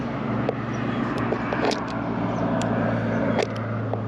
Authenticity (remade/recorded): recorded